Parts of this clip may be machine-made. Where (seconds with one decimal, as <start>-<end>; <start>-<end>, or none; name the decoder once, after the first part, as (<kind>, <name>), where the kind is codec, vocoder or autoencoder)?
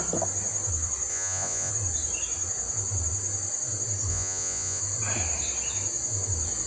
1.1-1.7 (vocoder, Vocos); 4.1-4.8